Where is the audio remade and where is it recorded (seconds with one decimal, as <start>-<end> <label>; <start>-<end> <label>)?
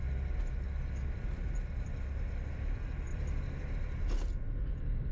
0.0-3.1 recorded; 3.1-3.7 remade; 3.7-5.1 recorded